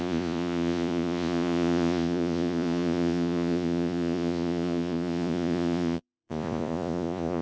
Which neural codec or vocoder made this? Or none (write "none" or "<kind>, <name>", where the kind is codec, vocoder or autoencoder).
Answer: vocoder, Vocos